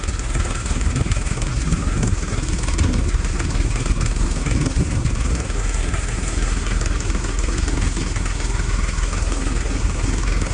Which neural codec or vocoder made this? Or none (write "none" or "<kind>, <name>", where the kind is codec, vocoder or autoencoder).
codec, SNAC